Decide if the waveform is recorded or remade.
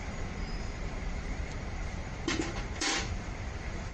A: remade